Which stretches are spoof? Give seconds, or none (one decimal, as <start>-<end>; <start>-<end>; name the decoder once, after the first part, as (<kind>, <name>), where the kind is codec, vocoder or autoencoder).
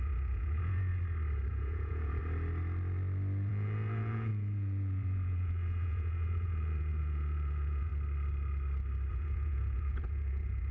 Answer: 0.0-0.9 (vocoder, Vocos); 1.5-2.2; 3.5-7.9; 9.1-10.7